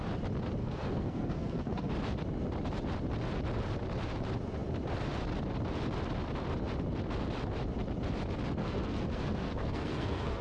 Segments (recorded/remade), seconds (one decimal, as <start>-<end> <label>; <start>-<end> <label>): 0.0-0.6 recorded; 0.6-1.9 remade; 1.9-8.6 recorded; 8.6-10.4 remade